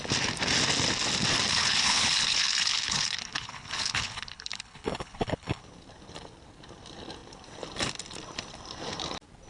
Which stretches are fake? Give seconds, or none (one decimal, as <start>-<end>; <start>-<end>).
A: 1.5-5.6